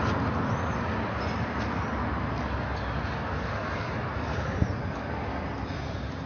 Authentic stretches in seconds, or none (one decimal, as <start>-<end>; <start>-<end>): 0.0-6.3